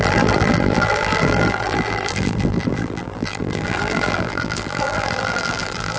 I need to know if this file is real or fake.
fake